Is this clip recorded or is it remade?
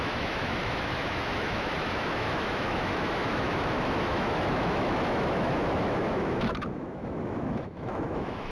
remade